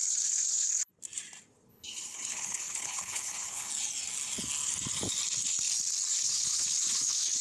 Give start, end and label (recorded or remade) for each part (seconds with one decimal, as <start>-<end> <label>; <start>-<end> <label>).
0.0-0.9 remade; 0.9-1.7 recorded; 1.7-3.7 remade; 3.7-6.1 recorded; 6.1-7.4 remade